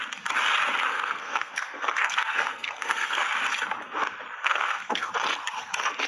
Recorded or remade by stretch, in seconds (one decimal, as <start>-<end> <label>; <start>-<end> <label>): 0.0-0.9 recorded; 0.9-3.2 remade; 3.2-4.4 recorded; 4.4-5.1 remade; 5.1-6.1 recorded